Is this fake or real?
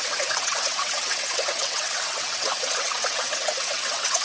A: fake